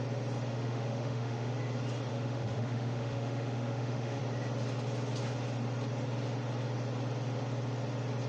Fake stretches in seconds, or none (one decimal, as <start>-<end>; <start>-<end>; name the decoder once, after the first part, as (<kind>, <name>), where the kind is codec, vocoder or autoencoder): 0.5-1.5 (autoencoder, DAC-VAE); 2.1-4.2

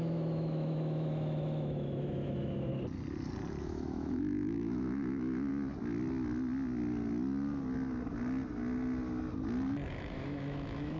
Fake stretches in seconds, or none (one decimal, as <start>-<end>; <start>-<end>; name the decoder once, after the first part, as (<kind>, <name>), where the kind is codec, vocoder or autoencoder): 0.0-2.7 (autoencoder, DAC-VAE); 3.6-5.5; 9.9-11.0

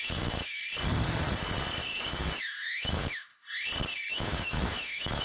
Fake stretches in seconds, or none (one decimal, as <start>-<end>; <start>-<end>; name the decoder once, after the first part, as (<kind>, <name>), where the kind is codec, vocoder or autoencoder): 0.0-0.6 (autoencoder, DAC-VAE); 2.4-3.3; 4.1-5.2

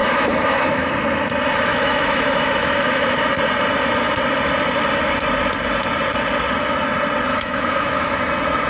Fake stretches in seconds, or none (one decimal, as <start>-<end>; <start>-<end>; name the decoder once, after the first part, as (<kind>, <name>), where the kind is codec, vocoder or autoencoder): 0.0-0.9 (autoencoder, DAC-VAE); 1.7-3.3; 7.3-8.2

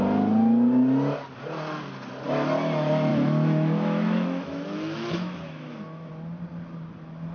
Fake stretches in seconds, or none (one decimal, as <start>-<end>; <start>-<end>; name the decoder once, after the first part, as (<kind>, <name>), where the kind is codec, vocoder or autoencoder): 3.1-6.1 (autoencoder, DAC-VAE)